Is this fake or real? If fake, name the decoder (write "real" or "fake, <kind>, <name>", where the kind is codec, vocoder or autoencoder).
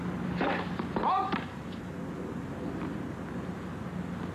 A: real